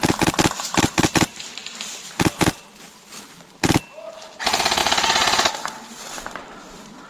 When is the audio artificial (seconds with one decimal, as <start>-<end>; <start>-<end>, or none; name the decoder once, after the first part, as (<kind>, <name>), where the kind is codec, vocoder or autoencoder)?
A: none